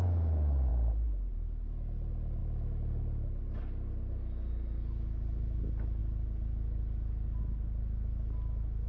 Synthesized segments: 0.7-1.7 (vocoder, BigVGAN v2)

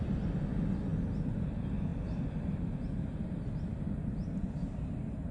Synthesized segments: none

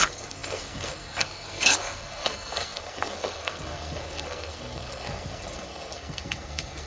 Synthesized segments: 0.0-6.9 (codec, SNAC)

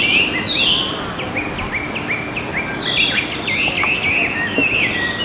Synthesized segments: none

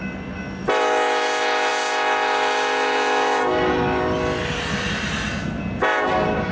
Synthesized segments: none

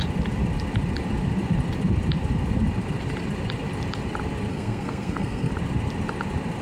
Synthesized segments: 4.5-5.5 (codec, SNAC)

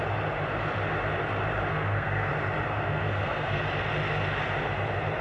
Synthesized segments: 1.7-2.3 (codec, SNAC); 2.7-3.6